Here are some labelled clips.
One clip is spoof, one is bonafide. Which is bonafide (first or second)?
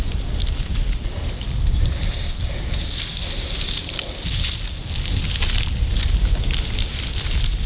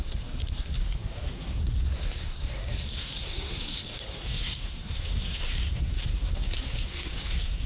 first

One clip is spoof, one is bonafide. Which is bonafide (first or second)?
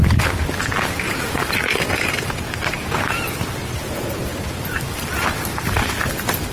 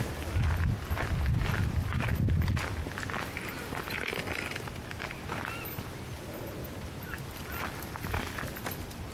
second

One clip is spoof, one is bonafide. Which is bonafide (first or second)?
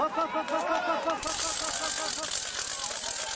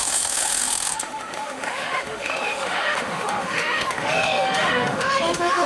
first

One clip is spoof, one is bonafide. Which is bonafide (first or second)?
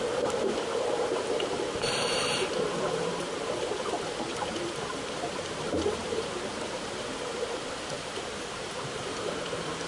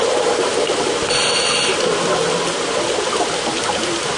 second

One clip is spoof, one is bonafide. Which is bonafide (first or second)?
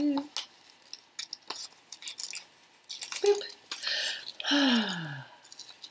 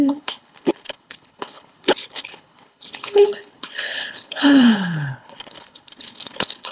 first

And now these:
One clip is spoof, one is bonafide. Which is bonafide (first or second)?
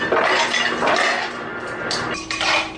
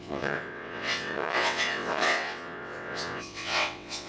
first